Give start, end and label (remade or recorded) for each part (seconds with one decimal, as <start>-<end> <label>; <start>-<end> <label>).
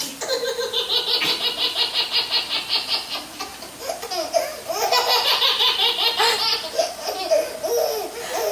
0.0-4.5 recorded; 4.5-5.3 remade; 5.3-8.5 recorded